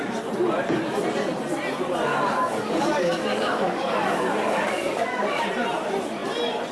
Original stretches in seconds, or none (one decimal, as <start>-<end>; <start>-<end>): 0.0-2.1; 5.4-6.7